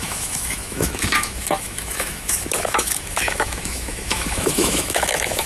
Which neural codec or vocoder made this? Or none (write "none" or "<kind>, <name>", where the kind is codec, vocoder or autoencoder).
autoencoder, DAC-VAE